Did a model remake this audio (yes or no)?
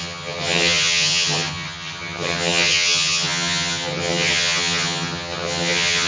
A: yes